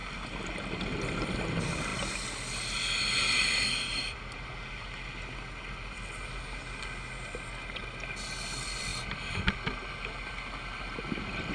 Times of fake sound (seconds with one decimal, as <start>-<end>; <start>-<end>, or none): none